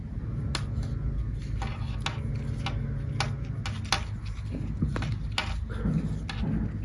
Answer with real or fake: real